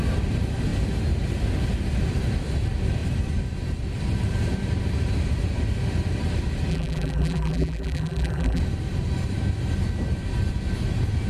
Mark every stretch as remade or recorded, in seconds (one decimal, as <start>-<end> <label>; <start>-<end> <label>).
0.0-6.7 recorded; 6.7-8.6 remade; 8.6-11.3 recorded